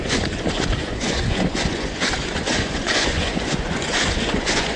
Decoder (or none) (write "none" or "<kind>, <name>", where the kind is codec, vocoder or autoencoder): vocoder, Vocos